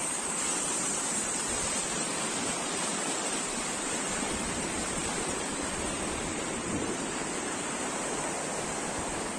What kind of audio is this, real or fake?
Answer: fake